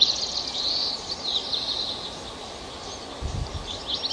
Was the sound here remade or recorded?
recorded